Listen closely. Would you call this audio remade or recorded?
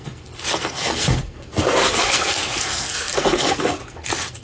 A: remade